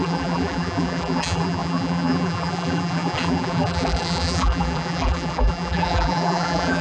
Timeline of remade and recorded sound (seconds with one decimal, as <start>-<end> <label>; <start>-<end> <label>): 0.0-6.8 remade